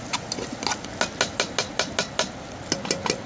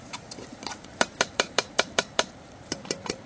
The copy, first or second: second